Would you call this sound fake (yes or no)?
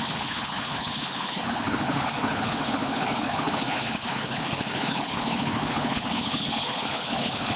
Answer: yes